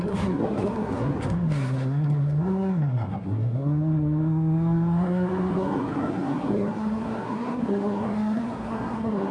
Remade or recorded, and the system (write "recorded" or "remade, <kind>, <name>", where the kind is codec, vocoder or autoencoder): remade, codec, SNAC